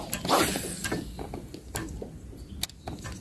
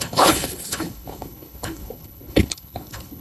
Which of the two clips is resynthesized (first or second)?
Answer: second